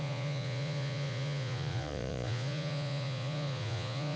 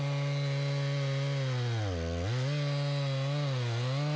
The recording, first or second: second